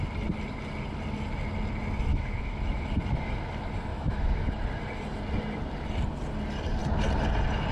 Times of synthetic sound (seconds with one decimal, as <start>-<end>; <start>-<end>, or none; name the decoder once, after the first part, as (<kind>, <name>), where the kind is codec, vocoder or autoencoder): 2.1-2.6 (autoencoder, DAC-VAE); 3.9-4.5